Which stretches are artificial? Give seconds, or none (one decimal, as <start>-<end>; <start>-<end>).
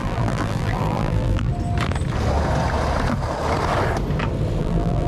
0.0-1.5; 4.6-5.1